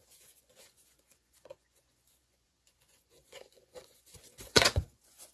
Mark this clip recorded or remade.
remade